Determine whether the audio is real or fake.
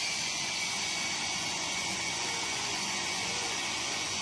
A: fake